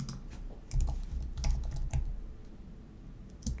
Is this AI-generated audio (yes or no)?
no